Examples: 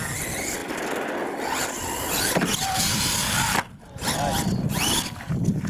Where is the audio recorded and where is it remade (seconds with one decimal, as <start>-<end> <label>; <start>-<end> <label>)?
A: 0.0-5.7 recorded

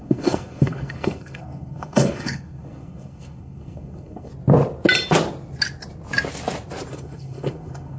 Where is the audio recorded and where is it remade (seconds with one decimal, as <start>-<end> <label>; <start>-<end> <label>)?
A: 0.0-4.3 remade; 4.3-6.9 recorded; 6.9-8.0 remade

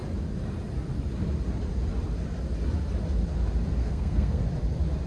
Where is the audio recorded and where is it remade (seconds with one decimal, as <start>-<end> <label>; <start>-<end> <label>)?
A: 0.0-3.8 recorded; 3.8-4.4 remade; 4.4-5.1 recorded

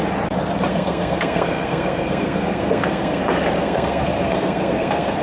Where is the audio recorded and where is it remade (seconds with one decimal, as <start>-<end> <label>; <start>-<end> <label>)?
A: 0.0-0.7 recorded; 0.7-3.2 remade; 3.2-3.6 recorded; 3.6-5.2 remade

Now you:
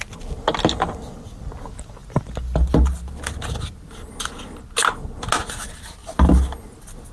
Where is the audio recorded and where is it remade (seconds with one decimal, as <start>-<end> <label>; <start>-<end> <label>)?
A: 0.0-7.1 recorded

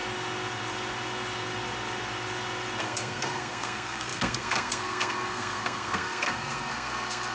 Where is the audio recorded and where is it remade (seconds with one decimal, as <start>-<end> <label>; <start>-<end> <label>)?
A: 0.0-2.8 recorded; 2.8-7.3 remade

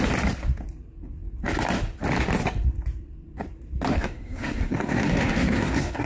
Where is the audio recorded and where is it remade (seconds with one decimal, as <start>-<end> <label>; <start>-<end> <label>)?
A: 0.0-3.9 recorded; 3.9-6.1 remade